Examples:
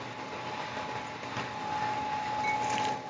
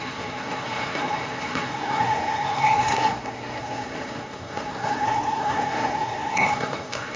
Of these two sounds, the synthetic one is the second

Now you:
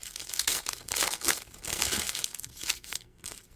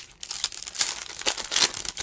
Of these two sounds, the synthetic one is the first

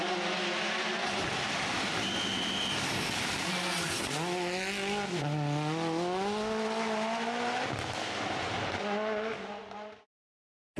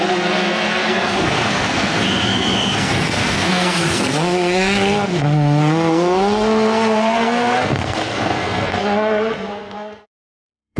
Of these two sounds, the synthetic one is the second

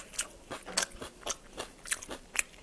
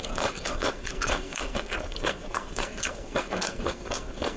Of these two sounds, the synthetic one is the second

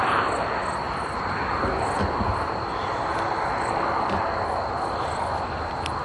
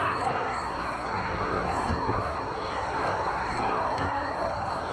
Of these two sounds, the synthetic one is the second